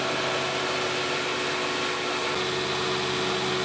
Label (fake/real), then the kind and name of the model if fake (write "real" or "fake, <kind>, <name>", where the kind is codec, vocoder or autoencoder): real